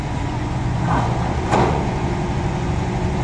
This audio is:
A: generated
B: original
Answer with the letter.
A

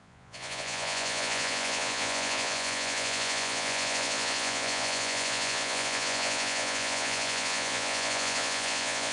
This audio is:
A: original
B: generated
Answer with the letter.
B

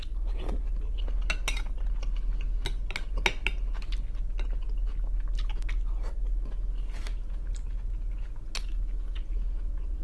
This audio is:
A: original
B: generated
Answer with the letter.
A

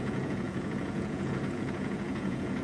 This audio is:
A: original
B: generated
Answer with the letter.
B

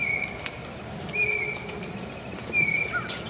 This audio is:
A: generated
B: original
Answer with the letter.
B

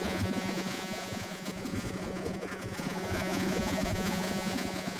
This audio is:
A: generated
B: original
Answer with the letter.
A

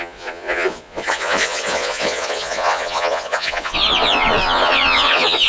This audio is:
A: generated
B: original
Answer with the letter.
A